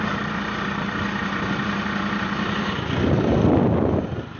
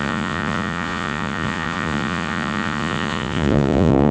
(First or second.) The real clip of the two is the first